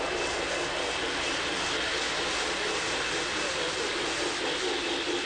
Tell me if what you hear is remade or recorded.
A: recorded